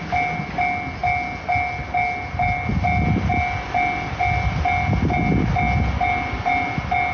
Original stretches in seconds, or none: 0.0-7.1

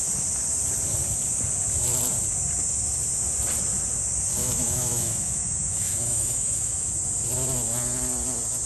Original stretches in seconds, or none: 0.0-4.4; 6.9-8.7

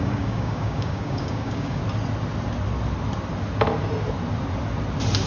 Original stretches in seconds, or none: 1.8-5.3

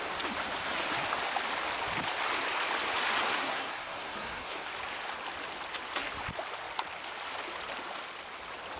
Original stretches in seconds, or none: 0.0-3.3; 4.7-8.8

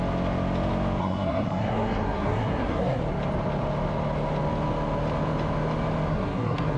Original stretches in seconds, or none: 0.0-1.0; 3.0-6.1